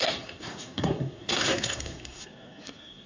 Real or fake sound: fake